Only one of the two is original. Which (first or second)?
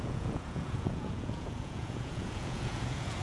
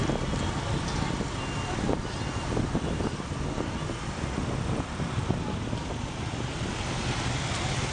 second